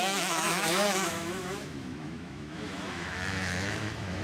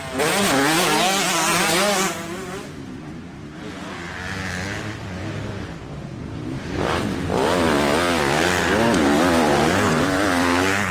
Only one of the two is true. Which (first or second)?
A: second